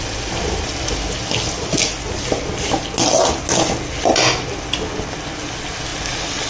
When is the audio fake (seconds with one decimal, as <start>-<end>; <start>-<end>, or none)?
none